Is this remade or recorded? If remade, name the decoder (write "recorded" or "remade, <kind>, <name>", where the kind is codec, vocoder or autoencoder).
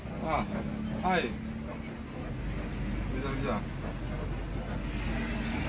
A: recorded